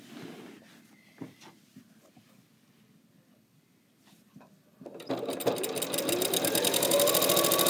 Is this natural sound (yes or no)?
yes